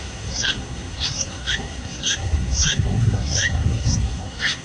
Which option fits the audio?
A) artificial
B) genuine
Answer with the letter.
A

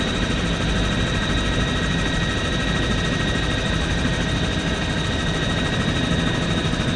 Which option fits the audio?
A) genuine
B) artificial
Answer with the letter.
A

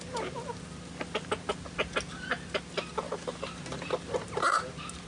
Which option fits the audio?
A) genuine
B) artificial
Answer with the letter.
A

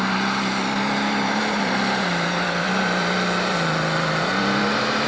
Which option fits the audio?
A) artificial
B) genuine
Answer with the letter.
A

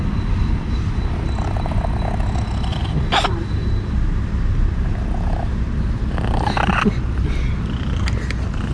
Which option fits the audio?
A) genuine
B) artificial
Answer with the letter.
A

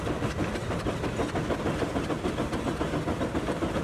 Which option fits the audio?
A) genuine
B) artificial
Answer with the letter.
A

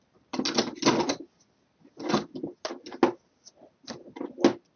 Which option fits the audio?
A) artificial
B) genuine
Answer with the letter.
B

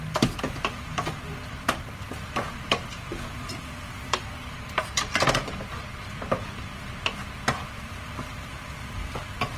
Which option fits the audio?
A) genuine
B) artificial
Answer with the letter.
B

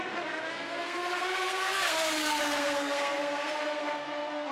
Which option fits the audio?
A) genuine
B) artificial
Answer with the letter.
B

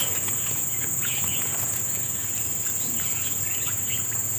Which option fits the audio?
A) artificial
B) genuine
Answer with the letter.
A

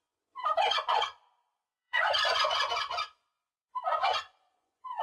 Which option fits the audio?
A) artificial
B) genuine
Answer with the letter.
A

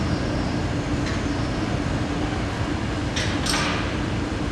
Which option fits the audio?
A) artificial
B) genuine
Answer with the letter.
B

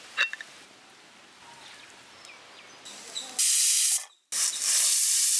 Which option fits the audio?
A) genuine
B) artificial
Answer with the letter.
A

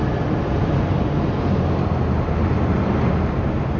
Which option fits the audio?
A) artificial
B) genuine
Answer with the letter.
B